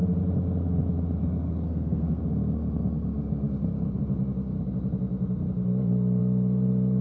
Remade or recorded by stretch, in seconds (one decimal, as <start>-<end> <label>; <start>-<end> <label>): 0.0-1.2 recorded; 1.2-2.2 remade; 2.2-7.0 recorded